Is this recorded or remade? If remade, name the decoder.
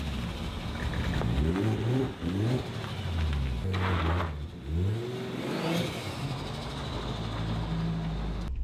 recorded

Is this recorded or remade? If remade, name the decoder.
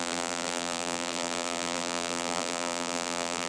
remade, vocoder, BigVGAN v2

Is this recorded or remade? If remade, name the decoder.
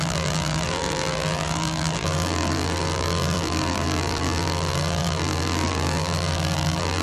remade, vocoder, BigVGAN v2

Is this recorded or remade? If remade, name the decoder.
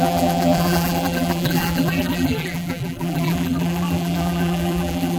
remade, vocoder, BigVGAN v2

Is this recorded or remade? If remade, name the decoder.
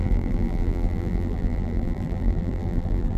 remade, vocoder, BigVGAN v2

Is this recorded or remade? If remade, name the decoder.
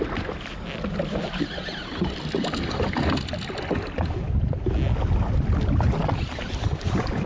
recorded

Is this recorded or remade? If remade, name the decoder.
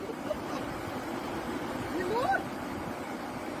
recorded